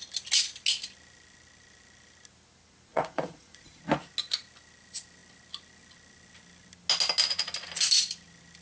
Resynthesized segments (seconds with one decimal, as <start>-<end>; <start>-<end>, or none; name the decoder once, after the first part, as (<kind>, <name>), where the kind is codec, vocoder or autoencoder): 2.9-3.8 (vocoder, Vocos)